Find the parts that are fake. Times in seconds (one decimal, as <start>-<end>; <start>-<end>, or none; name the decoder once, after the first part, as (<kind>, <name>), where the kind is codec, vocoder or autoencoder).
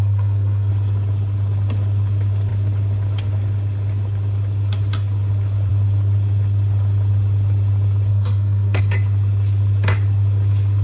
0.0-0.7 (codec, SNAC); 8.1-8.8